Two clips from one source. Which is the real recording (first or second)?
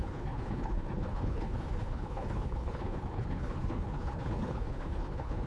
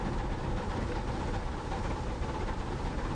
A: second